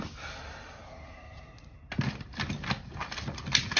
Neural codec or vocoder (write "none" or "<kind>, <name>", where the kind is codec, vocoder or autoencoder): none